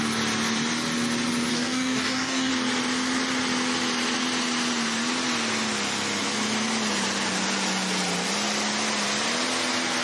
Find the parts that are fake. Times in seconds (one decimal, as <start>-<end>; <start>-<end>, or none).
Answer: 1.5-2.5